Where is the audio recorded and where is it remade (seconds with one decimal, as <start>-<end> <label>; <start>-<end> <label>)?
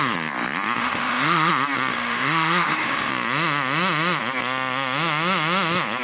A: 0.0-0.8 recorded; 0.8-1.5 remade; 1.5-1.9 recorded; 1.9-3.1 remade; 3.1-6.0 recorded